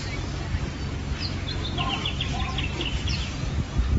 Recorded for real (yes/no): yes